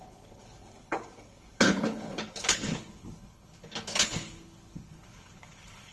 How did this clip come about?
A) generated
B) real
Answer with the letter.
A